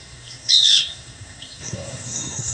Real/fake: fake